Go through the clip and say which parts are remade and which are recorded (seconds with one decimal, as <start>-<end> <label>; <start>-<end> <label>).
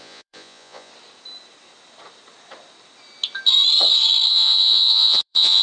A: 0.0-0.9 remade; 0.9-4.3 recorded; 4.3-5.6 remade